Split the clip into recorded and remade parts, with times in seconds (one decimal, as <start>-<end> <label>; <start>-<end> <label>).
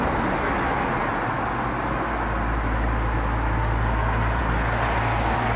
0.0-5.6 recorded